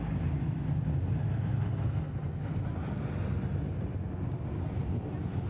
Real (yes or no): yes